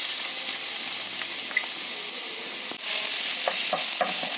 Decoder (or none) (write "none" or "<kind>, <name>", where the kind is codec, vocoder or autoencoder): none